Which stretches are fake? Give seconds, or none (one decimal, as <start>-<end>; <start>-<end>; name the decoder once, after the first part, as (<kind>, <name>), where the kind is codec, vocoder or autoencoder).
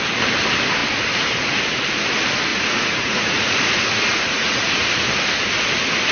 2.5-4.9 (vocoder, Vocos)